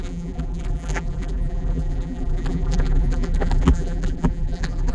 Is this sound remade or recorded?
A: remade